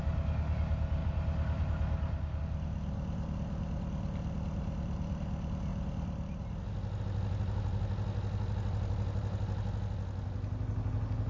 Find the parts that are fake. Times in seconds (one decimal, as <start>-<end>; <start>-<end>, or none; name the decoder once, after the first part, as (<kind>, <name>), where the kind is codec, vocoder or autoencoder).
none